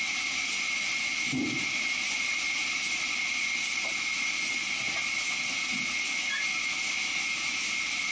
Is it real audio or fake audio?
real